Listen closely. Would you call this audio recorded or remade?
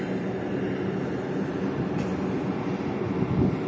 recorded